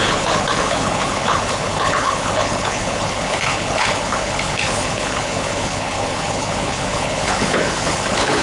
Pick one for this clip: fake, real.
fake